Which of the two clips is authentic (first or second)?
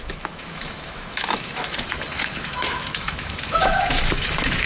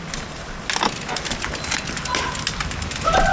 second